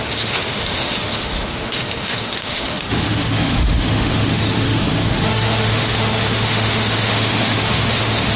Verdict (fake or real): fake